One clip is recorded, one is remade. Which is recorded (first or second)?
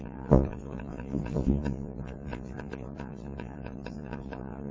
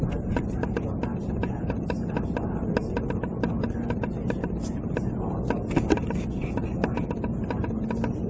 second